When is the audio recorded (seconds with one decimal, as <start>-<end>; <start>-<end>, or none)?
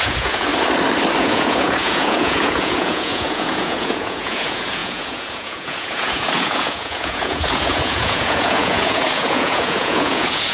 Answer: 0.5-1.2